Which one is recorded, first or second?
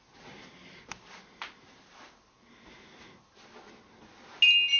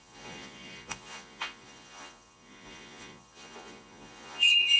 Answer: first